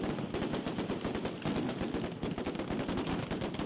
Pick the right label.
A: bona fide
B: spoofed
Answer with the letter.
A